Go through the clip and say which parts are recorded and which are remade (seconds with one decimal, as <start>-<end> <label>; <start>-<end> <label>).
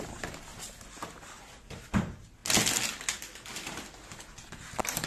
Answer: 0.0-0.5 remade; 0.5-1.4 recorded; 1.4-2.4 remade; 2.4-3.9 recorded; 3.9-5.1 remade